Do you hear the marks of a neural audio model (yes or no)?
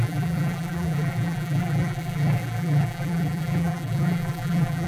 yes